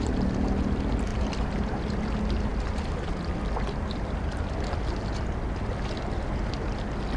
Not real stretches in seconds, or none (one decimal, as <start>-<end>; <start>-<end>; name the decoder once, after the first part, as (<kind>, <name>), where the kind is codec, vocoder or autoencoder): 1.1-1.7 (vocoder, BigVGAN v2)